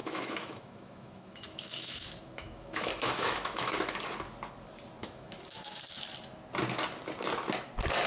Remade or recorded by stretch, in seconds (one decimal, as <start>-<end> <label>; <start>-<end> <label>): 0.0-4.0 remade; 4.0-5.0 recorded; 5.0-5.8 remade; 5.8-8.1 recorded